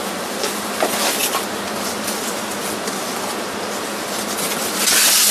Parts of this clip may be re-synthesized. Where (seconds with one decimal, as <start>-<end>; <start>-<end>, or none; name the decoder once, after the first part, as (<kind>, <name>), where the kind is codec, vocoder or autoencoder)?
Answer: none